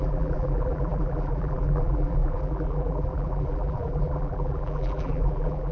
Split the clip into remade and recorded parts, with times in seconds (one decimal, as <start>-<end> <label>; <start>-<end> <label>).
0.0-5.7 remade

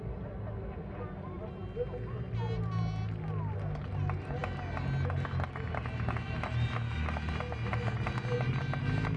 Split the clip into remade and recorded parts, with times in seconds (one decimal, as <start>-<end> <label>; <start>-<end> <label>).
0.0-9.2 recorded

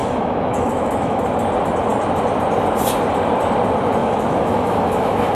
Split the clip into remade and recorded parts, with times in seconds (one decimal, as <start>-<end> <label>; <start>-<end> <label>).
0.0-1.2 remade; 1.2-4.0 recorded; 4.0-5.3 remade

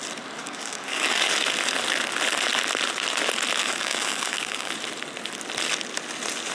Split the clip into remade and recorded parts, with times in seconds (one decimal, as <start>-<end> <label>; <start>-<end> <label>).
0.0-0.4 recorded; 0.4-1.3 remade; 1.3-3.6 recorded; 3.6-4.7 remade; 4.7-6.5 recorded

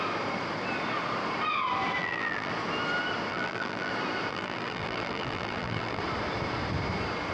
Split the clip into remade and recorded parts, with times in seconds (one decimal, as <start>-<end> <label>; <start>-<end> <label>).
0.0-2.0 recorded; 2.0-2.5 remade; 2.5-3.3 recorded; 3.3-3.9 remade; 3.9-4.3 recorded; 4.3-6.0 remade; 6.0-7.3 recorded

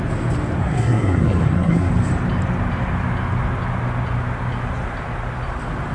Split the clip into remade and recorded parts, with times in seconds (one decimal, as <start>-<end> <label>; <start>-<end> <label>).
0.0-0.6 recorded; 0.6-1.9 remade; 1.9-5.9 recorded

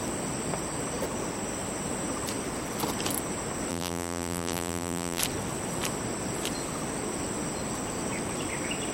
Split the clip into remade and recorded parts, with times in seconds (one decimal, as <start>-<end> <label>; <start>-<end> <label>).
0.0-3.7 recorded; 3.7-5.2 remade; 5.2-8.9 recorded

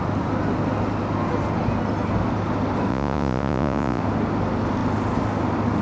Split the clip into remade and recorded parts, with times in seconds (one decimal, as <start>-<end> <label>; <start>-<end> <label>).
0.0-2.9 recorded; 2.9-4.0 remade; 4.0-5.8 recorded